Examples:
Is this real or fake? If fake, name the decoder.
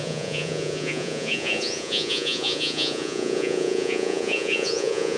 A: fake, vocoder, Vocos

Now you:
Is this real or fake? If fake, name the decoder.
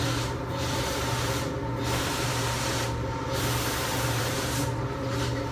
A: fake, vocoder, BigVGAN v2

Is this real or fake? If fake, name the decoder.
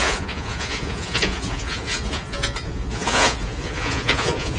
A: fake, vocoder, Vocos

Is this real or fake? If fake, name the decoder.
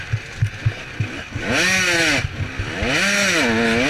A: real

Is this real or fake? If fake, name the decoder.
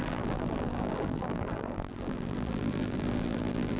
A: fake, vocoder, BigVGAN v2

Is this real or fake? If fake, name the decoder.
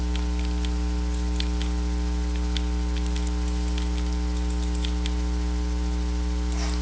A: real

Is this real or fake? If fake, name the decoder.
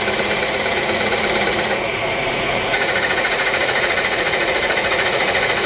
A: fake, vocoder, Vocos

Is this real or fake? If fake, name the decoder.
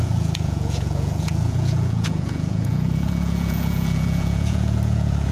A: fake, vocoder, Vocos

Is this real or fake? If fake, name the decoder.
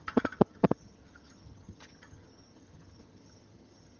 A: fake, vocoder, HiFi-GAN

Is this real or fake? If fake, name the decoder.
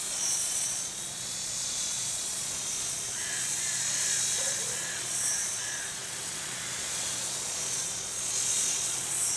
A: fake, vocoder, Vocos